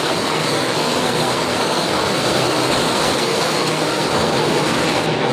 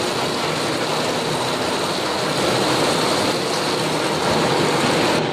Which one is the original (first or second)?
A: second